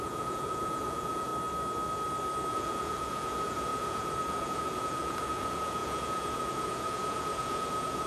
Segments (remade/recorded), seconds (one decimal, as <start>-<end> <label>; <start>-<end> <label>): 0.0-1.3 remade; 1.3-2.5 recorded; 2.5-8.1 remade